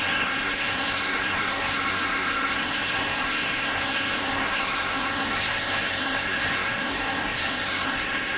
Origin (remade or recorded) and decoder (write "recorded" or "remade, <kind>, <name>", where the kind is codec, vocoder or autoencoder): remade, codec, SNAC